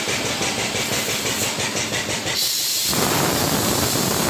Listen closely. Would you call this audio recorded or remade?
remade